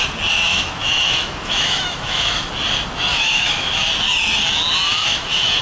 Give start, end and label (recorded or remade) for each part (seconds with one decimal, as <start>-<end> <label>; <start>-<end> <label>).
0.0-0.5 recorded; 0.5-2.5 remade; 2.5-3.1 recorded; 3.1-3.9 remade; 3.9-5.0 recorded; 5.0-5.6 remade